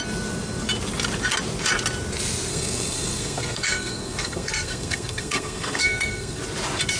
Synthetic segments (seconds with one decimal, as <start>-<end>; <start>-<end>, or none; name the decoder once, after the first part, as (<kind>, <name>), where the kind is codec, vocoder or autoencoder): 2.5-6.4 (codec, SNAC)